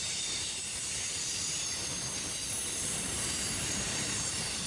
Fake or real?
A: fake